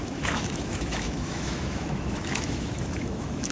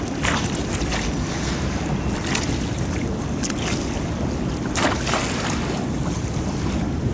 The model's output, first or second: first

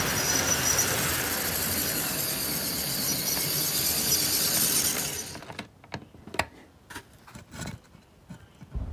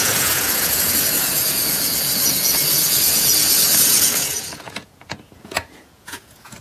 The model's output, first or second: second